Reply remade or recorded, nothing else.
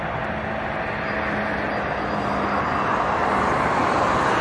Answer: recorded